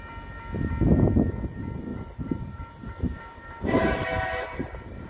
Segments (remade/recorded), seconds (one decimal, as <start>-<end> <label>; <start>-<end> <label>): 0.0-1.9 recorded; 1.9-5.1 remade